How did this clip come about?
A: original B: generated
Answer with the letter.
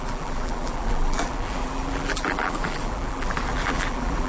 B